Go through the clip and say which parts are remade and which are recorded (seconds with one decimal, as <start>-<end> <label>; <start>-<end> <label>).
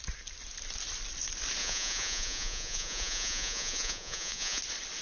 0.0-1.6 recorded; 1.6-4.6 remade; 4.6-5.0 recorded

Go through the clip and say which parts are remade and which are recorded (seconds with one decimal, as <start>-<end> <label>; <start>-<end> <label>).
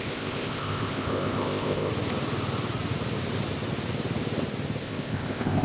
0.0-1.9 remade; 1.9-4.8 recorded; 4.8-5.6 remade